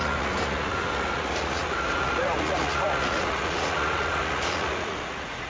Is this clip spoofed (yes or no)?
yes